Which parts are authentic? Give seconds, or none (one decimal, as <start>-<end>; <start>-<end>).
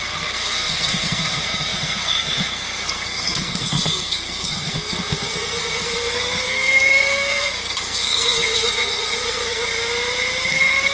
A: 9.6-10.5